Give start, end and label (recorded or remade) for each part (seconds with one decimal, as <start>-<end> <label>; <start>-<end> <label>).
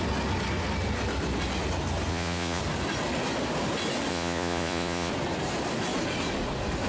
0.0-2.1 recorded; 2.1-2.6 remade; 2.6-4.1 recorded; 4.1-5.1 remade; 5.1-6.9 recorded